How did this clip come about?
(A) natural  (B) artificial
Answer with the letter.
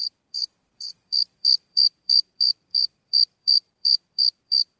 B